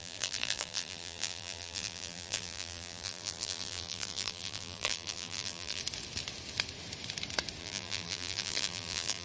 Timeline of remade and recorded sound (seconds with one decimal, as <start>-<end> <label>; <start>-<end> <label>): 0.0-5.8 remade; 5.8-7.6 recorded; 7.6-9.2 remade